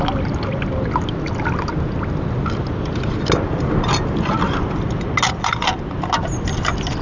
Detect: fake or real real